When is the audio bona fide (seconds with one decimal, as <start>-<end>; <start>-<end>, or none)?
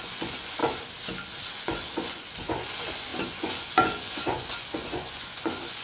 0.6-1.5